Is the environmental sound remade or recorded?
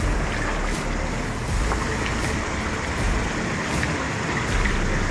recorded